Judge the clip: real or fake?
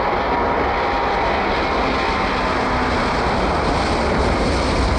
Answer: real